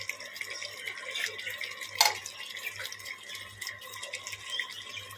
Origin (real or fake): real